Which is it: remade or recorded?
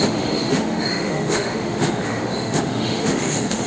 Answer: remade